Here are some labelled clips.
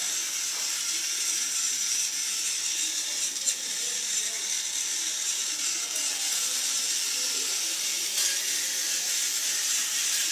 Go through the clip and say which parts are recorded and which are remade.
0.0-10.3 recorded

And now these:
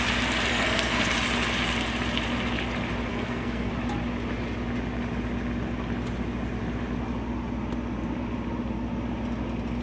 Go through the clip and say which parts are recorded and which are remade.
0.0-0.5 recorded; 0.5-1.1 remade; 1.1-3.1 recorded; 3.1-3.7 remade; 3.7-9.8 recorded

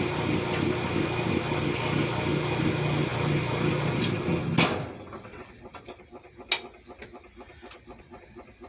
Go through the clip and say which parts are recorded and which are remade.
0.0-8.7 recorded

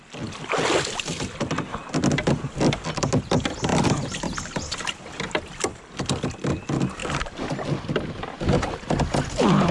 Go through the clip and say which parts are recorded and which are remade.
0.0-3.7 recorded; 3.7-5.8 remade; 5.8-9.7 recorded

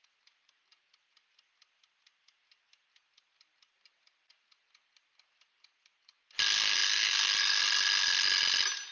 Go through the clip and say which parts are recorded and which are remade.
0.0-8.9 recorded

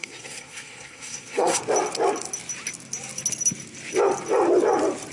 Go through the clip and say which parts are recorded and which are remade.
0.0-1.6 remade; 1.6-5.1 recorded

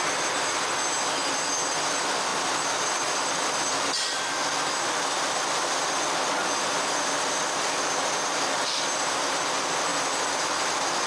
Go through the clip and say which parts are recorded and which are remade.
0.0-11.1 recorded